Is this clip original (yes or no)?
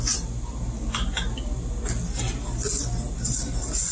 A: yes